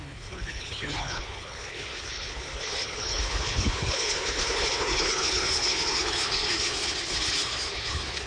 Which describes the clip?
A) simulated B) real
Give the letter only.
A